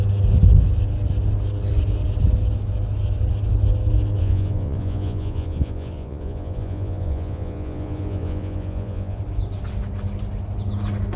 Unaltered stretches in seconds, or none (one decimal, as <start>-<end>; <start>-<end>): 0.0-4.2; 9.2-11.2